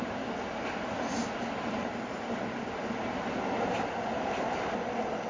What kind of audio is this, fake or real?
real